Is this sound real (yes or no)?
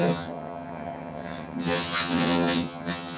no